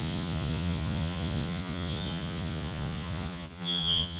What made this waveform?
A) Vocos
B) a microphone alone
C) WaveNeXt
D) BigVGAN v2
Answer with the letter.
A